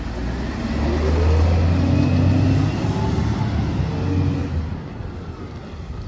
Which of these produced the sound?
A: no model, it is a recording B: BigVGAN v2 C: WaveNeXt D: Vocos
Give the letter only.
A